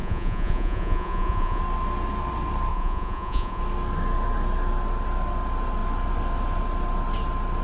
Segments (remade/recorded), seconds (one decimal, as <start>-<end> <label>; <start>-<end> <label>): 0.0-1.6 remade; 1.6-2.7 recorded; 2.7-3.6 remade; 3.6-7.6 recorded